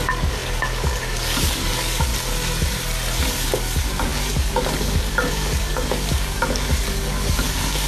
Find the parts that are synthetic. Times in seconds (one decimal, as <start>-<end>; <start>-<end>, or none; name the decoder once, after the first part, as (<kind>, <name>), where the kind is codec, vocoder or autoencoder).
0.0-2.1 (codec, DAC); 3.2-7.9